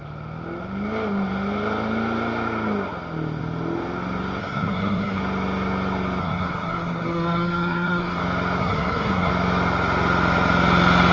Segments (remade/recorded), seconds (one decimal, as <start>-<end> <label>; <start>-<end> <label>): 0.0-4.4 recorded; 4.4-5.2 remade; 5.2-6.2 recorded; 6.2-8.2 remade; 8.2-8.6 recorded; 8.6-9.3 remade; 9.3-11.1 recorded